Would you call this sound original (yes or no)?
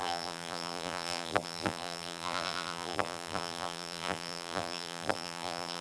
no